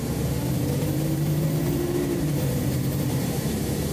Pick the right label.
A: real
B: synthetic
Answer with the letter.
B